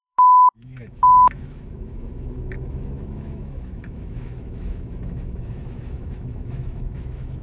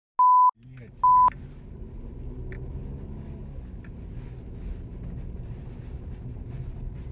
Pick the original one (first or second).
second